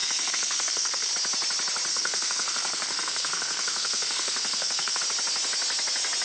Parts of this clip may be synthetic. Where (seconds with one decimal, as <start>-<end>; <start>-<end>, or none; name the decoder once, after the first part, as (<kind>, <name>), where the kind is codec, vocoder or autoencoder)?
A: 0.0-1.1 (codec, SNAC); 1.9-5.0